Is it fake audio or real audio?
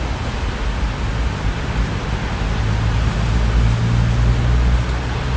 real